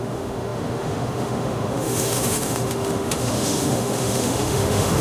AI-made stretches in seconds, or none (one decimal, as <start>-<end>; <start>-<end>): 0.0-5.0